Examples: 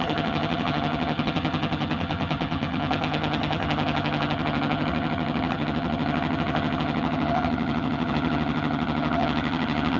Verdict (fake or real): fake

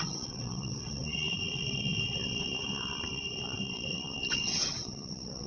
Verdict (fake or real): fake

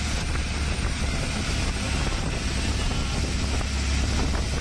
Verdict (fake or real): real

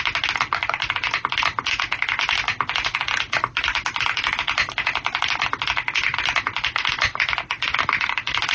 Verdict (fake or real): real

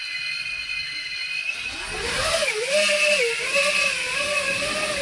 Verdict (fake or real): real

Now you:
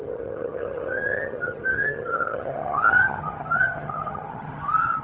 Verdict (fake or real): fake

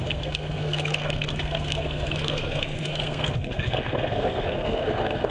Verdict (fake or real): fake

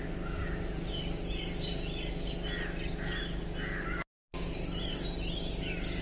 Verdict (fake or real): real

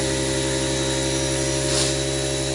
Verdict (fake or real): real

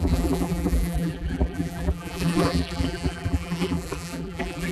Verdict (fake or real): fake